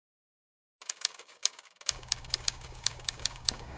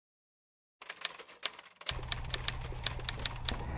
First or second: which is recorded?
second